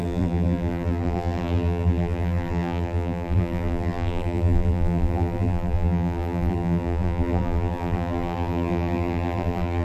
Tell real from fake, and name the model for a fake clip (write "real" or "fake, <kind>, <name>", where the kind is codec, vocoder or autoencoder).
fake, vocoder, BigVGAN v2